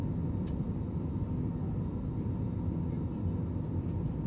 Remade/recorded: recorded